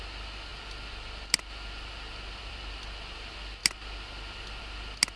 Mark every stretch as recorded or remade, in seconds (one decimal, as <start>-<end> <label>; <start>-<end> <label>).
0.0-5.2 recorded